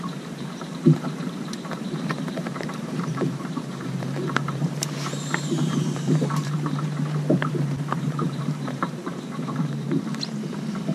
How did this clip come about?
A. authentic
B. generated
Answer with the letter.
B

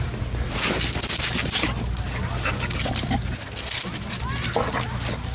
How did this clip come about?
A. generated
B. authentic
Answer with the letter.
B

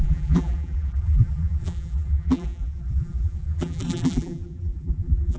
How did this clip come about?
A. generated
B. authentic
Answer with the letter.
A